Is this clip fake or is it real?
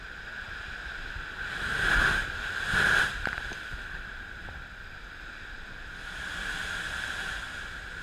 real